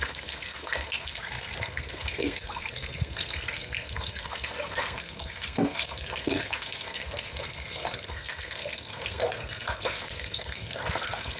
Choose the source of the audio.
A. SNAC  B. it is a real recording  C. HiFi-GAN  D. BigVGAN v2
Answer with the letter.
A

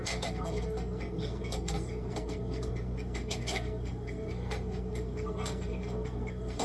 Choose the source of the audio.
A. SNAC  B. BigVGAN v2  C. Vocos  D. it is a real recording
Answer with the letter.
A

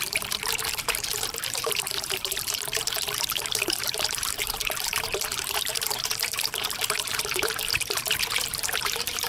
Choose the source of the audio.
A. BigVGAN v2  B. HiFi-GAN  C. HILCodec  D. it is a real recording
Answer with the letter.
A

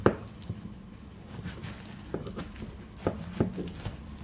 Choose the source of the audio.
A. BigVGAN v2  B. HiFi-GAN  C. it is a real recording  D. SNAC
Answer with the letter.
C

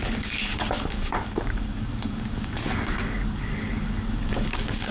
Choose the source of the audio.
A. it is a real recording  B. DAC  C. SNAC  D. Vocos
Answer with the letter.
B